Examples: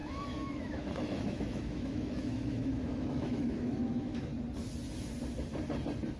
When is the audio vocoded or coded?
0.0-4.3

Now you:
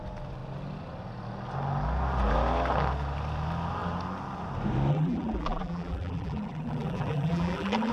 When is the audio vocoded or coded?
4.9-7.9

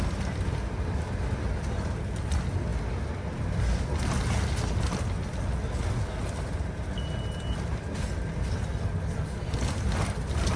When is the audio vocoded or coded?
none

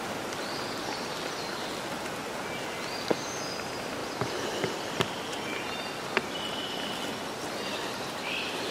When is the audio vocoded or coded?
none

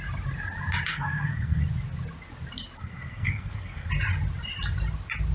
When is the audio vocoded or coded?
0.9-1.6; 2.8-3.9

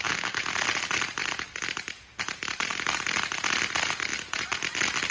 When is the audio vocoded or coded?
none

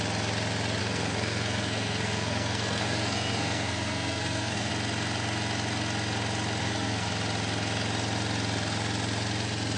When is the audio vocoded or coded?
0.8-4.7; 6.6-7.1